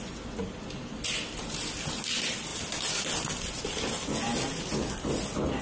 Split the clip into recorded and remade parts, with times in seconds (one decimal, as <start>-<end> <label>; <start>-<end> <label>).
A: 0.0-5.6 recorded